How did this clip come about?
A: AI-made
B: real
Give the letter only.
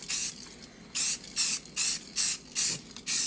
B